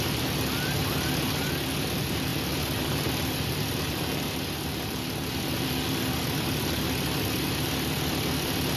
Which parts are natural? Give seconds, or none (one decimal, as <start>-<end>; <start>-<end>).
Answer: 0.0-8.8